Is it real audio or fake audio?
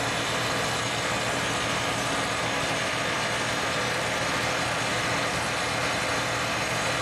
real